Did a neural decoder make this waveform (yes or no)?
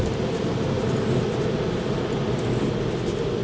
no